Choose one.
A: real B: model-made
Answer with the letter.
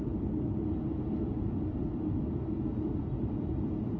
A